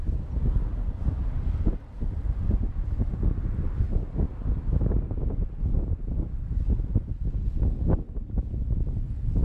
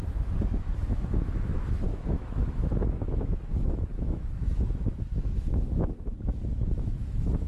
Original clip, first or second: first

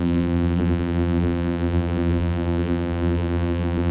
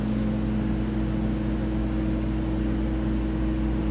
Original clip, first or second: second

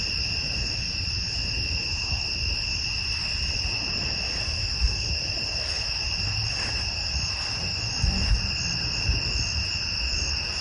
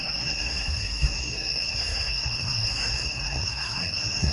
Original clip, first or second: first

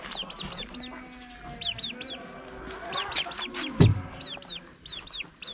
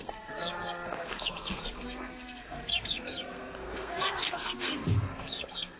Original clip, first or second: first